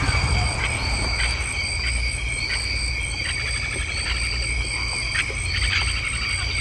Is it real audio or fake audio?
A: real